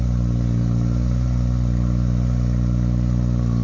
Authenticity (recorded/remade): recorded